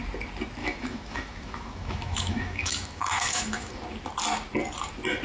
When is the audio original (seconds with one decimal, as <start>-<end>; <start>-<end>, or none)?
0.0-0.6; 3.7-5.2